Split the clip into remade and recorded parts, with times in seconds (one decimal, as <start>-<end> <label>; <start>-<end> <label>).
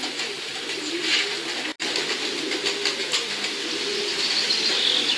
0.0-5.2 recorded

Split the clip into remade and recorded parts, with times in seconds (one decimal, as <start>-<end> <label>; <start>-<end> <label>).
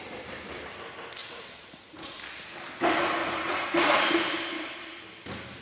0.0-1.2 recorded; 1.2-2.2 remade; 2.2-3.2 recorded; 3.2-4.4 remade; 4.4-5.6 recorded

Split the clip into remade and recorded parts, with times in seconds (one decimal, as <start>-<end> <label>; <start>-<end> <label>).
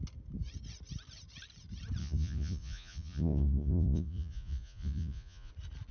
0.0-2.0 recorded; 2.0-5.5 remade; 5.5-5.9 recorded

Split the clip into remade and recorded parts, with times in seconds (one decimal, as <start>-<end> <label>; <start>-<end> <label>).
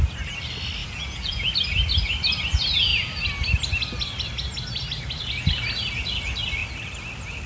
0.0-0.8 recorded; 0.8-1.5 remade; 1.5-7.5 recorded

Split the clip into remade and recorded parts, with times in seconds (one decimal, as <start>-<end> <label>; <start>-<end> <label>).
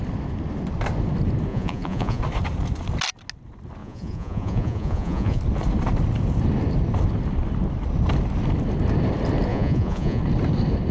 0.0-1.5 recorded; 1.5-2.2 remade; 2.2-3.8 recorded; 3.8-5.4 remade; 5.4-9.5 recorded; 9.5-10.2 remade; 10.2-10.9 recorded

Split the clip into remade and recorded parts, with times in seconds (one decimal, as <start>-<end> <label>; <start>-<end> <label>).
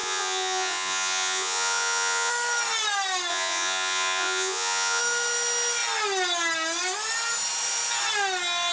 0.0-2.3 remade; 2.3-3.3 recorded; 3.3-5.0 remade; 5.0-8.7 recorded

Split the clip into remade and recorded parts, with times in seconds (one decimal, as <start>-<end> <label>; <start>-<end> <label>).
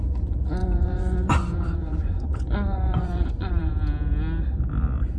0.0-0.6 recorded; 0.6-3.7 remade; 3.7-5.2 recorded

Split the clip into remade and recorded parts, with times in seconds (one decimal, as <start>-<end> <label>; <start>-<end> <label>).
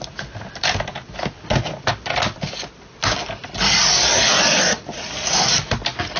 0.0-6.2 recorded